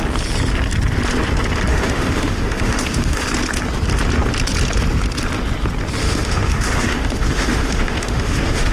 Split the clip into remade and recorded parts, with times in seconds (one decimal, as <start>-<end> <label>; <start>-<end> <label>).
0.0-1.7 recorded; 1.7-3.2 remade; 3.2-6.0 recorded; 6.0-8.7 remade